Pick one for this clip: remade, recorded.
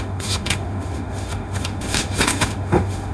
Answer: remade